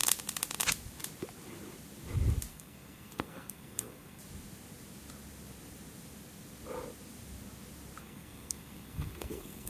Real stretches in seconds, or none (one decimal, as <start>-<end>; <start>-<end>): 0.0-2.5; 4.2-8.0